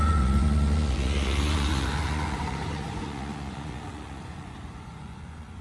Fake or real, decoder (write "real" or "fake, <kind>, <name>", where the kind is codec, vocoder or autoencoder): fake, vocoder, Vocos